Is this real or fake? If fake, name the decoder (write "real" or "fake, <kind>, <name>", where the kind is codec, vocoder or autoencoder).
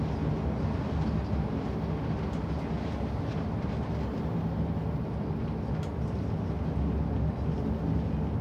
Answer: real